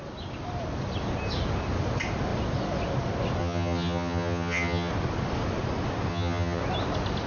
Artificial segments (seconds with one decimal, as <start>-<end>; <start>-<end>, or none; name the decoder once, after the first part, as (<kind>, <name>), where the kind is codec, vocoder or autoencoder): 3.4-4.9 (vocoder, HiFi-GAN); 6.1-6.6